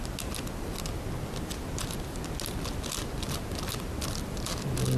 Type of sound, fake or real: real